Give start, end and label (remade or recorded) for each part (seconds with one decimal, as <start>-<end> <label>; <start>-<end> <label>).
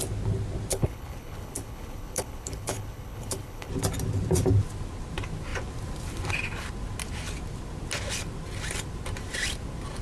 0.0-0.7 recorded; 0.7-3.7 remade; 3.7-10.0 recorded